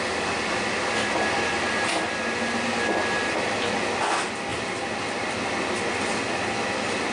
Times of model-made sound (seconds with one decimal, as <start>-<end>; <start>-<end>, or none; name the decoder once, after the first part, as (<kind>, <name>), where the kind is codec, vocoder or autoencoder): none